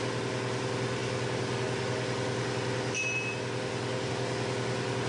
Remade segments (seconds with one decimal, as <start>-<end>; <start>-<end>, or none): none